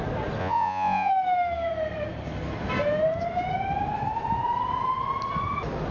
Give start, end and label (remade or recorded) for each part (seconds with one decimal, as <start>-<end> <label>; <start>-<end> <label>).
0.0-0.4 recorded; 0.4-1.1 remade; 1.1-5.9 recorded